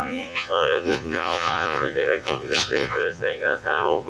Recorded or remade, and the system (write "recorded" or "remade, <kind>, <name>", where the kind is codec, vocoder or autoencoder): remade, vocoder, Vocos